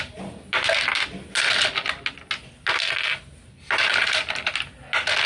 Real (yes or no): yes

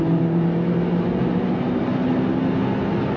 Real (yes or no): yes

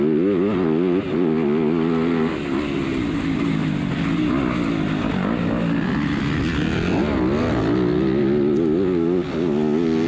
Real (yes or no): yes